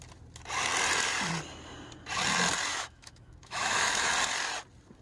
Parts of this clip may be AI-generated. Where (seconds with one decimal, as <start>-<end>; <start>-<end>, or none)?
2.7-4.1